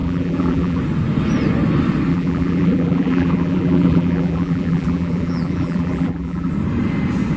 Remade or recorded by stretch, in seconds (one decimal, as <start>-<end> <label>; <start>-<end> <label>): 0.0-0.8 remade; 0.8-2.1 recorded; 2.1-6.5 remade; 6.5-7.4 recorded